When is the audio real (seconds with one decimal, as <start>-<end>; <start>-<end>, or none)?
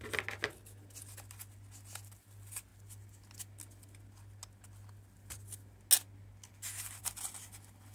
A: 0.0-7.9